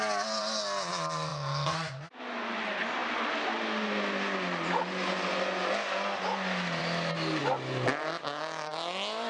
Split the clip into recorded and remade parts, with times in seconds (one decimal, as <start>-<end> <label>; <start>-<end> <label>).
0.0-9.3 recorded